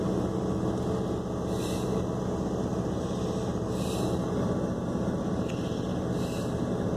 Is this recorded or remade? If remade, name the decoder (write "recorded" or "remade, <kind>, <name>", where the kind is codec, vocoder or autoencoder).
recorded